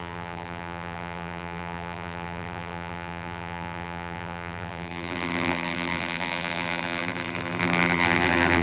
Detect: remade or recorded remade